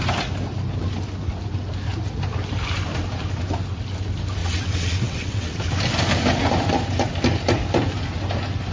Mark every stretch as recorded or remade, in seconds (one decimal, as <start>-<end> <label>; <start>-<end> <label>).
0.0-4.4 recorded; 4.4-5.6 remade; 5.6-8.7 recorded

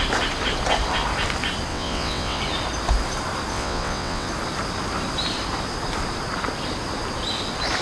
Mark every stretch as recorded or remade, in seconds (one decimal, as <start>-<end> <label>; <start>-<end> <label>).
0.0-1.7 recorded; 1.7-2.4 remade; 2.4-3.5 recorded; 3.5-4.3 remade; 4.3-7.8 recorded

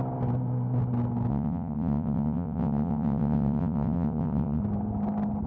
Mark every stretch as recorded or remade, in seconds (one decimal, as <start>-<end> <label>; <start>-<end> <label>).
0.0-1.3 recorded; 1.3-4.6 remade; 4.6-5.5 recorded